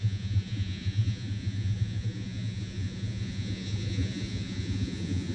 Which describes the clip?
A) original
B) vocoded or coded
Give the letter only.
B